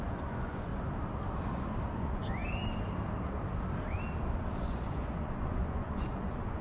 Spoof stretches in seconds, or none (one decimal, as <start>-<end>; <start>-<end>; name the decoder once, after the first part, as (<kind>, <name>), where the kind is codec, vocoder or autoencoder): 0.0-0.7 (vocoder, Vocos); 1.9-2.4; 4.6-6.6

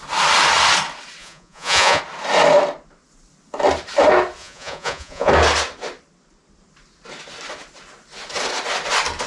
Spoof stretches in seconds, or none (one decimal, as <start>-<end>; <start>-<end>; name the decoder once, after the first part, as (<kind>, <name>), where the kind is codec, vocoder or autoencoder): 1.2-2.0 (vocoder, Vocos); 4.4-5.3

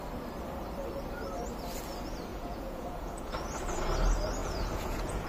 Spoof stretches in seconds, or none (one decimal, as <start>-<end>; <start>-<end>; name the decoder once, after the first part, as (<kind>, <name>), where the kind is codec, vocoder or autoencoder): 2.3-3.4 (vocoder, Vocos); 4.4-5.3

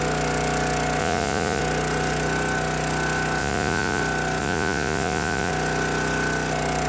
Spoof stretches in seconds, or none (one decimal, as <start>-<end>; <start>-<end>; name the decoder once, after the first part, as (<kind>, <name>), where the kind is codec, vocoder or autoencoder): 1.0-1.6 (vocoder, Vocos); 3.4-4.0; 4.4-5.5

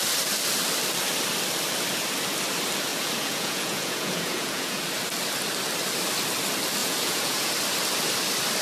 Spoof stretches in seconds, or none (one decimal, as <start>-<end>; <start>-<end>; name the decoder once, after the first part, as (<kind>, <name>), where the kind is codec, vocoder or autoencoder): 2.9-4.8 (vocoder, Vocos); 6.8-7.5